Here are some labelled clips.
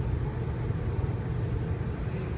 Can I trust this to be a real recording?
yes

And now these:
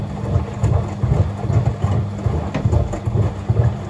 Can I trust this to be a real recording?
yes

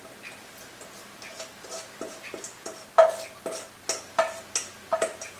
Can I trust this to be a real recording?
yes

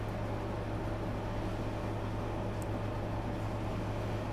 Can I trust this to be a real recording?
yes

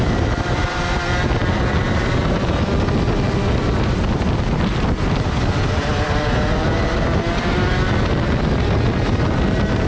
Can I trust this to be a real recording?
yes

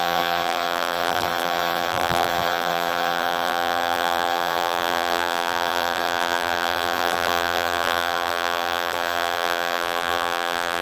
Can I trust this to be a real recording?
no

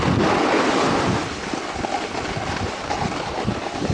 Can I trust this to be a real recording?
yes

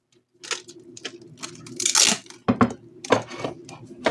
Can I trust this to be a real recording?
yes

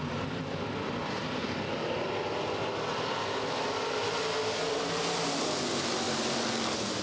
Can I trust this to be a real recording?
yes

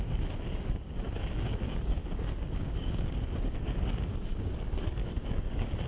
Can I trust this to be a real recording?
no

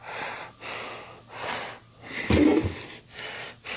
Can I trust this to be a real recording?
yes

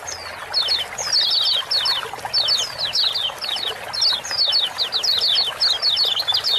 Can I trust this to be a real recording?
yes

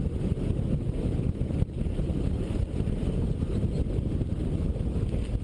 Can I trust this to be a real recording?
yes